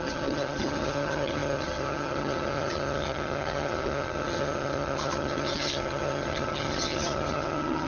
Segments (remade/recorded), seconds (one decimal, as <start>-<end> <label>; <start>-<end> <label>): 0.0-7.9 remade